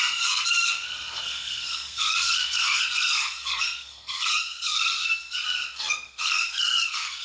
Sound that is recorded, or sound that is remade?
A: remade